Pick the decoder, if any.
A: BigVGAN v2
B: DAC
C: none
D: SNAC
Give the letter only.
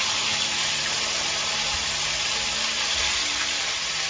C